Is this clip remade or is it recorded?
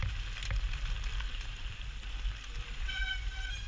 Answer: recorded